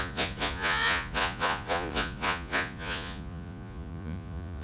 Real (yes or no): no